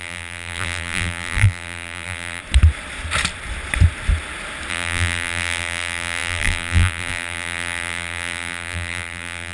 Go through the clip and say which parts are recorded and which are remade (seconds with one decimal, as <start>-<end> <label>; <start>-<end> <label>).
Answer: 0.0-2.4 remade; 2.4-4.7 recorded; 4.7-9.5 remade